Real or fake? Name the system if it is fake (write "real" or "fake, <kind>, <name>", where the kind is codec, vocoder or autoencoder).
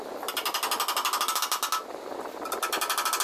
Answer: real